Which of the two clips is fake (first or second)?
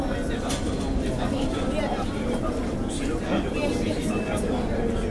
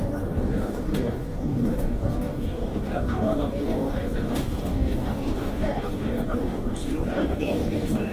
second